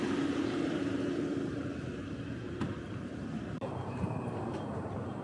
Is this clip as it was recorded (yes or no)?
no